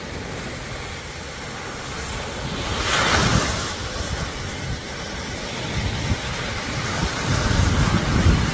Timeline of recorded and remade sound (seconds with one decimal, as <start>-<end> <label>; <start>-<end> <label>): 0.0-8.5 recorded